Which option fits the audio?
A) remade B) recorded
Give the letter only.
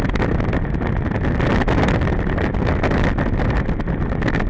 B